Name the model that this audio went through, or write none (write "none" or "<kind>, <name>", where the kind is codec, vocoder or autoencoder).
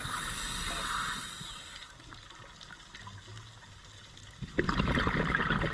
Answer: none